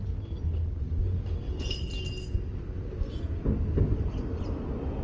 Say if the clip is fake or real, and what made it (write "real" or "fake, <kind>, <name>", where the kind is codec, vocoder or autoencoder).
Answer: real